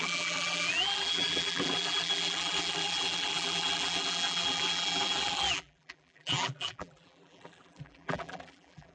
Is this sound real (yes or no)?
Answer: no